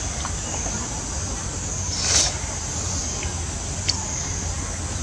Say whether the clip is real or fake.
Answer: real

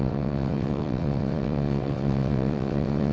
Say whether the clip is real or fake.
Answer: fake